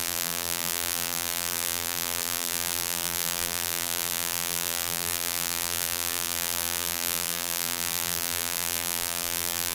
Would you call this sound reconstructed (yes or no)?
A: yes